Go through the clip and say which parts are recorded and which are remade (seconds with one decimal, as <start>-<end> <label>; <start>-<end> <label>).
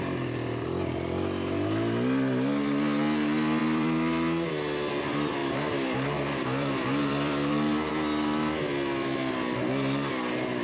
0.0-3.6 recorded; 3.6-4.5 remade; 4.5-5.4 recorded; 5.4-7.9 remade; 7.9-10.6 recorded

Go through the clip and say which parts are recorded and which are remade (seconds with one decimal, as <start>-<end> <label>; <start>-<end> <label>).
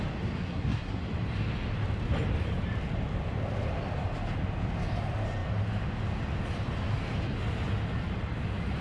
0.0-0.4 recorded; 0.4-1.0 remade; 1.0-8.8 recorded